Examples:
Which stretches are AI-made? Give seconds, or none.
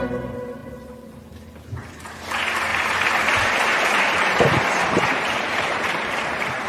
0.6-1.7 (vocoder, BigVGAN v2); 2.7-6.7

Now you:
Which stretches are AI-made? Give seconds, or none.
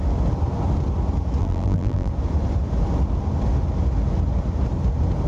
1.4-2.1 (vocoder, BigVGAN v2)